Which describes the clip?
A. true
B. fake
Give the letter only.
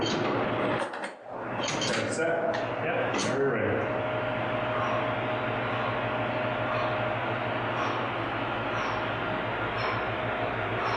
A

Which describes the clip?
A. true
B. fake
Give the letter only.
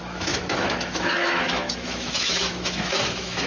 B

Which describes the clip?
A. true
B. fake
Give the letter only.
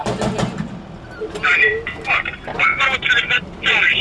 A